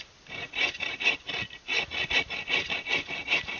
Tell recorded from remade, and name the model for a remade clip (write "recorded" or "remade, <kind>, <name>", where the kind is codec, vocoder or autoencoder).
recorded